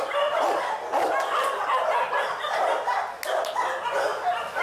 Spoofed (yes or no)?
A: no